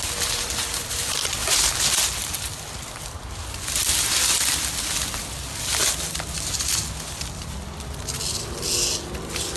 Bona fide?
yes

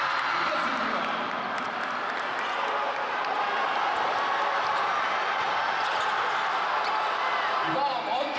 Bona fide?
yes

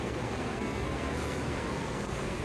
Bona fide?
no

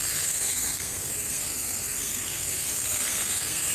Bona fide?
no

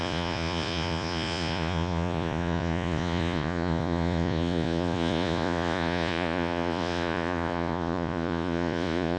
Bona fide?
no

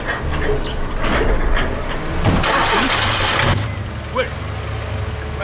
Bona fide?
yes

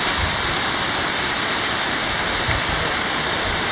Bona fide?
yes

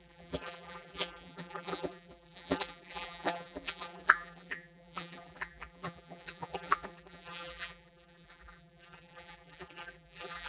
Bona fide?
no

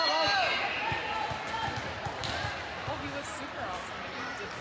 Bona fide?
yes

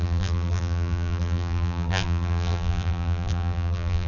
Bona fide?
no